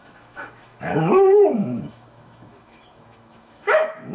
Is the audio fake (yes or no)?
yes